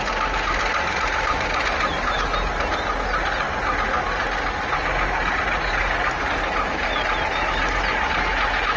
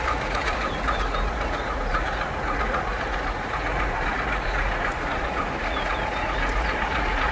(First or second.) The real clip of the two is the first